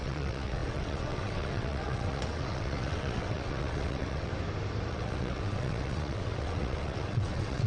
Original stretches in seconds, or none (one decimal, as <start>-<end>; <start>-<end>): 4.3-4.9